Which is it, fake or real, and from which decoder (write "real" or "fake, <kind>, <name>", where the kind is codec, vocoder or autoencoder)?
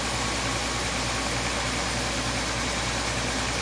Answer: real